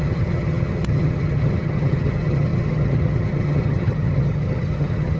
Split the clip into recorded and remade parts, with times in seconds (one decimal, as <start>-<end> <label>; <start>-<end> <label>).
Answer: 0.0-5.2 remade